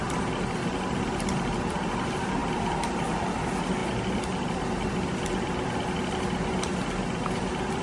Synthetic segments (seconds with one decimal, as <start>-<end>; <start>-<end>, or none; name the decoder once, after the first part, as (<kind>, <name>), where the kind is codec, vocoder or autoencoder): none